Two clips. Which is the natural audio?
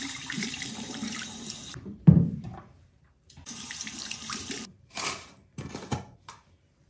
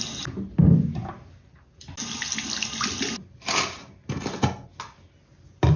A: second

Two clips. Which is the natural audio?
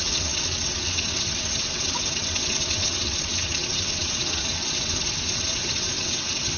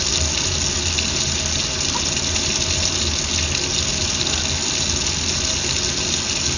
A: second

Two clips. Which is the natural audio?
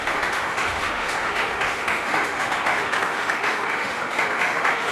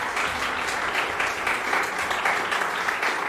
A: second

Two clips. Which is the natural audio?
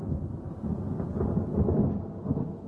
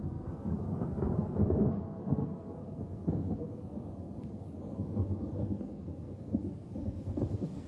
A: first